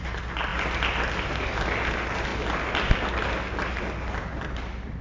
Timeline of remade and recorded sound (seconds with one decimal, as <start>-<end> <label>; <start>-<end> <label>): 0.0-5.0 recorded